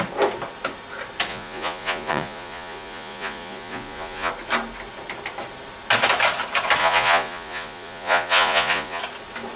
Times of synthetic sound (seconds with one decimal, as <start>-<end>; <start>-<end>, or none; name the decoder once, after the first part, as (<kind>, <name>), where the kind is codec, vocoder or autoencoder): 1.3-4.3 (vocoder, Vocos); 6.8-9.0